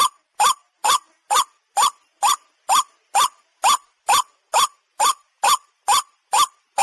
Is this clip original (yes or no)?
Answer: yes